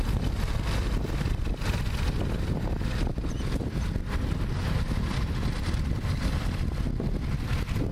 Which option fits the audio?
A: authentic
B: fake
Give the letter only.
A